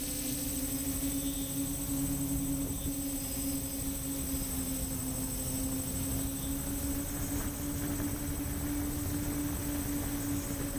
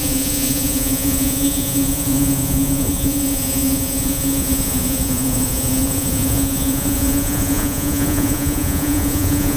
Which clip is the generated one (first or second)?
second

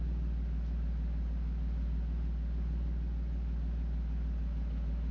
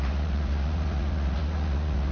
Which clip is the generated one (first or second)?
second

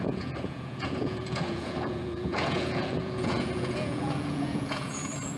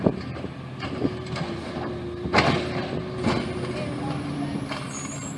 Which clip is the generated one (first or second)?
first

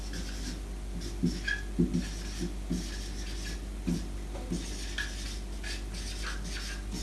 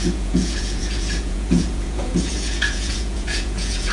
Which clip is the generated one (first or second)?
second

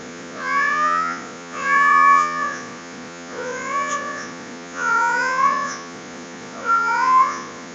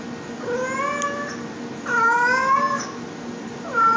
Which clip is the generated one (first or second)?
first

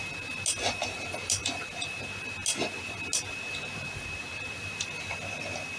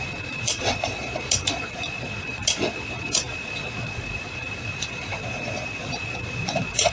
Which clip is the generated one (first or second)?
second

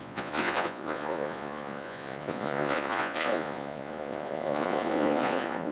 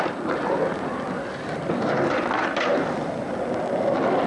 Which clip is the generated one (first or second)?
first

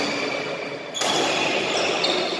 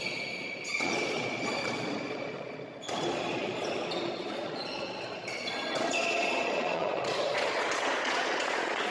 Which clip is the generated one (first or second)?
second